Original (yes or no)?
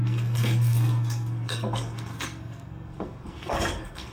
no